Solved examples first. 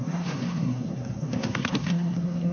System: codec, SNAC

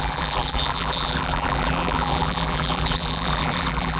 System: vocoder, BigVGAN v2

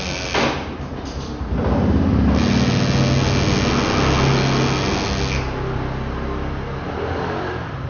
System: none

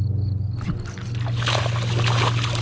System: none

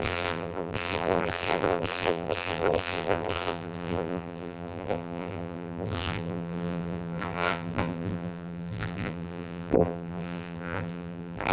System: vocoder, BigVGAN v2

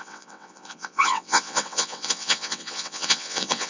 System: vocoder, WaveNeXt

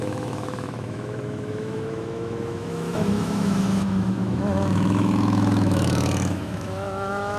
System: autoencoder, DAC-VAE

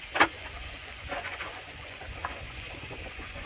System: vocoder, Vocos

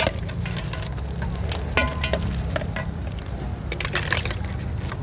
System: none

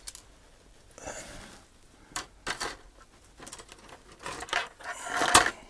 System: none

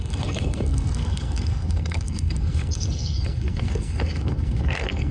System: codec, SNAC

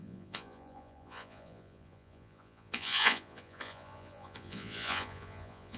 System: vocoder, Vocos